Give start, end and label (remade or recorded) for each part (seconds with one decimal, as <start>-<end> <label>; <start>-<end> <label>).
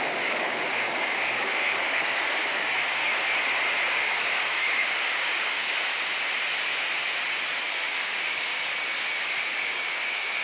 0.0-3.1 remade; 3.1-3.9 recorded; 3.9-5.9 remade; 5.9-7.7 recorded; 7.7-8.5 remade; 8.5-9.2 recorded; 9.2-10.4 remade